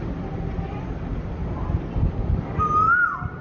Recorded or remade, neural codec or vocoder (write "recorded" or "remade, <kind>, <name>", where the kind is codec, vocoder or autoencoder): recorded